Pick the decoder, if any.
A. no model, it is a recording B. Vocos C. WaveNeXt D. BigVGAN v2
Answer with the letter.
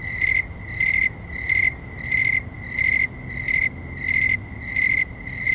A